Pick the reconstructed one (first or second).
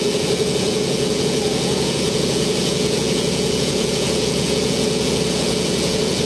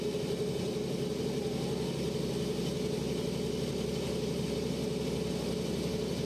first